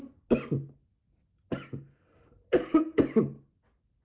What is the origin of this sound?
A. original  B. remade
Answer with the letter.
A